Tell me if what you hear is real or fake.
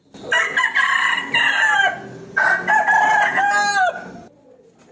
real